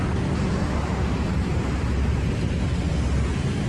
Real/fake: real